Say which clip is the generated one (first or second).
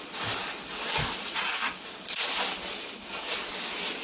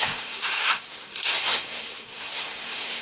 second